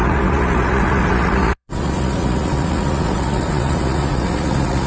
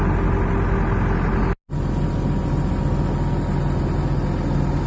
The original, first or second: second